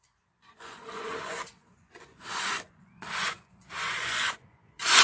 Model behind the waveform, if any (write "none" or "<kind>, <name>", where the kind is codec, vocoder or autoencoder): vocoder, Vocos